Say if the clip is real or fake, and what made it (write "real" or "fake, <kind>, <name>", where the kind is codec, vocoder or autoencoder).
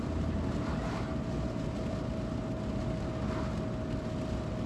real